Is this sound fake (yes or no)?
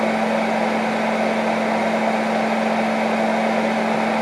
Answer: no